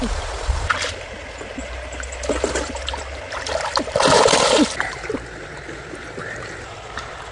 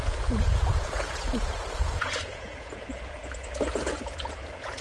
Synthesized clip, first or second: second